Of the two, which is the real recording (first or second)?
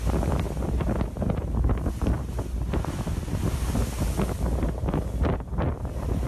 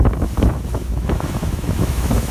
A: first